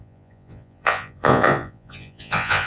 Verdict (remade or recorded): remade